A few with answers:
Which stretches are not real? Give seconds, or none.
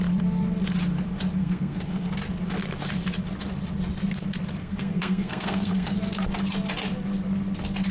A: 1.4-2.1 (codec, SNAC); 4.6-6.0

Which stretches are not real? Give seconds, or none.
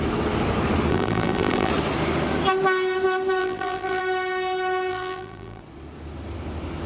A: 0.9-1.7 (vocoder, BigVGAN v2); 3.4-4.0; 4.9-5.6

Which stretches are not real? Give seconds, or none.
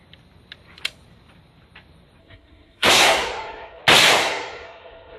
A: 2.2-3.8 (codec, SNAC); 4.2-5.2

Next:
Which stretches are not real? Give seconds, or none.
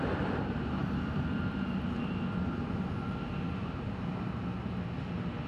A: 0.8-4.1 (vocoder, BigVGAN v2)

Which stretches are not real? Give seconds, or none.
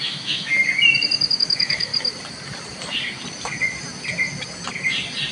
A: 0.0-0.5 (autoencoder, DAC-VAE); 1.4-1.9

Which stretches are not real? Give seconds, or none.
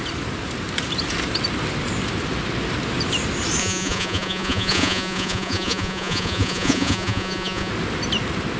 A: 3.6-7.7 (vocoder, Vocos)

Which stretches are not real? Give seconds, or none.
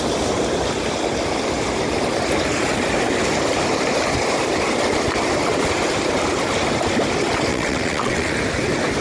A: 7.5-8.3 (vocoder, WaveNeXt)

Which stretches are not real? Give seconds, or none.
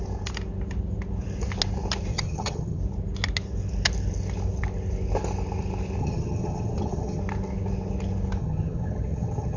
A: 2.1-2.8 (vocoder, HiFi-GAN); 6.0-7.2; 8.4-9.6